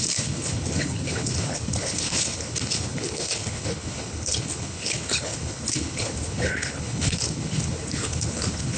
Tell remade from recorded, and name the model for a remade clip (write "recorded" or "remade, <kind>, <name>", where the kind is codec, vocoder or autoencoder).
remade, codec, HILCodec